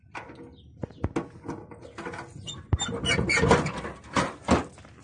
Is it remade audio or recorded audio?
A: recorded